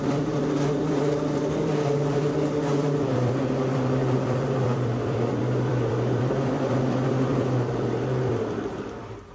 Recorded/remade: remade